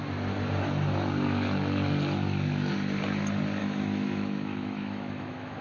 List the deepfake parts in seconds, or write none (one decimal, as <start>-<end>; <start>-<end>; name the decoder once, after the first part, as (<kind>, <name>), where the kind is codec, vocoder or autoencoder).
3.6-5.6 (autoencoder, DAC-VAE)